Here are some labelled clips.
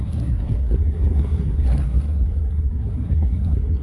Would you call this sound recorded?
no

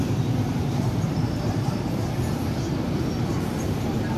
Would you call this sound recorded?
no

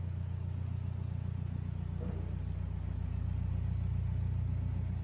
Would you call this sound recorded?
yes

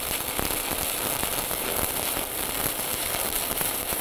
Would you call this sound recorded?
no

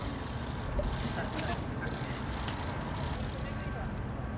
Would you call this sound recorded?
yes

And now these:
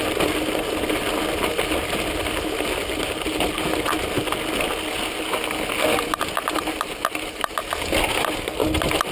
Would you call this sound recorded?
yes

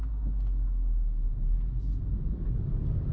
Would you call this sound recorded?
yes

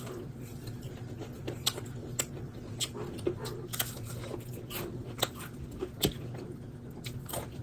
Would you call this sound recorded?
yes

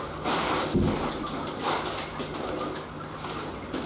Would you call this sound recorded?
yes